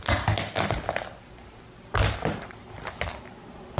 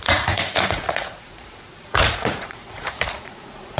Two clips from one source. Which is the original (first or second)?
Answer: first